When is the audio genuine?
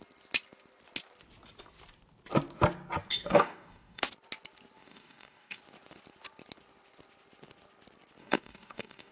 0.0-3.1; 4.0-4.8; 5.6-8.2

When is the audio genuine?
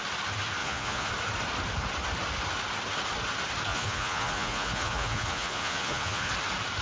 0.0-0.6; 1.1-3.7; 6.3-6.8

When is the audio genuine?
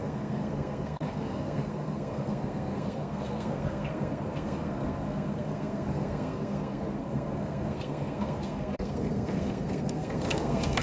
none